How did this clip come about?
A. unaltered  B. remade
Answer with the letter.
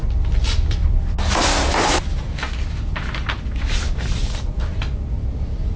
A